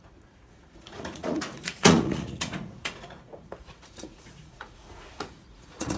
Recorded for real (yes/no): no